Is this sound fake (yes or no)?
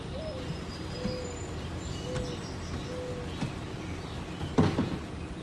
no